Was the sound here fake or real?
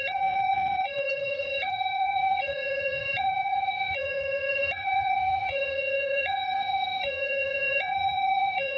fake